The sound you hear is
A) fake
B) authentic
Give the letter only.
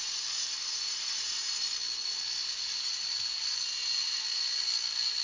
B